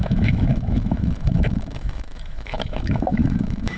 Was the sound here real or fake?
fake